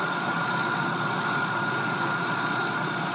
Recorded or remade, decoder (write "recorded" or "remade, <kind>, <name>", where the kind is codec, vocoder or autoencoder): remade, vocoder, Vocos